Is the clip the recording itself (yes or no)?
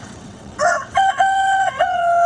no